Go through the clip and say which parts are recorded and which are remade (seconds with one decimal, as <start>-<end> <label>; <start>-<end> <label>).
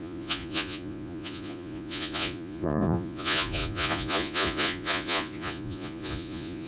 0.0-6.7 remade